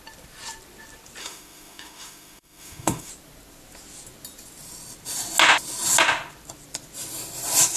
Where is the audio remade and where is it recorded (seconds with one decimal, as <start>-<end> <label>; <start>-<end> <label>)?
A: 0.0-1.2 recorded; 1.2-3.1 remade; 3.1-7.8 recorded